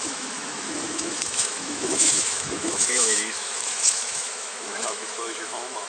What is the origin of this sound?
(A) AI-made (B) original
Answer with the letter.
A